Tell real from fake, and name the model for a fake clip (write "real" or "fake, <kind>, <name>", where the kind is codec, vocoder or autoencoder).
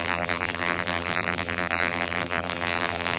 fake, vocoder, BigVGAN v2